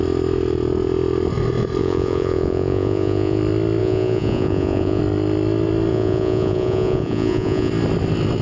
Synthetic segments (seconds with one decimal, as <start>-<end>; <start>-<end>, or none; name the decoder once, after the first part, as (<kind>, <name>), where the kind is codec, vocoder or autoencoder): 1.8-3.4 (vocoder, Vocos); 3.8-5.0; 5.9-7.7